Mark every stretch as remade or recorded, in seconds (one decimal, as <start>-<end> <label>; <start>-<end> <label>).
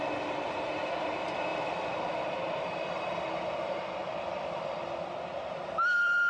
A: 0.0-6.3 recorded